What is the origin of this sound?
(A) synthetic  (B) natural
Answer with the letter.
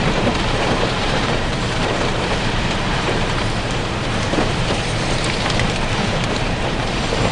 A